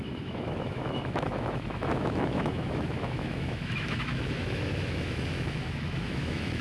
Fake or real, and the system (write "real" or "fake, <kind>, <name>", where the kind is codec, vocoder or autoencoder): fake, autoencoder, DAC-VAE